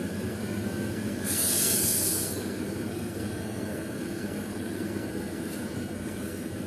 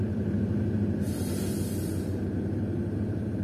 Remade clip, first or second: first